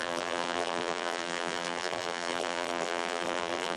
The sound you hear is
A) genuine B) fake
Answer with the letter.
B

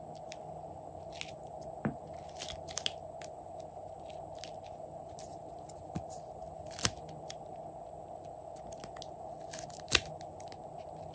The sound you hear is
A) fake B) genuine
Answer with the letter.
B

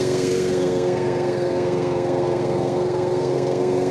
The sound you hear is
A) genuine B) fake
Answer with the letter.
B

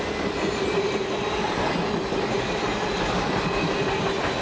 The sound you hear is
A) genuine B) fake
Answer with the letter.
A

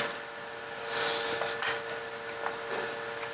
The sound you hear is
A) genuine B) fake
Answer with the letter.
A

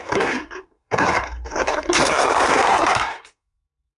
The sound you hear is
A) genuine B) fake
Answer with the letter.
B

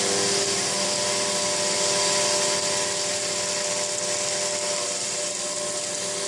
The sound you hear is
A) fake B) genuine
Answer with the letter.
B